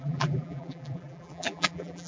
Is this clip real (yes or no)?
no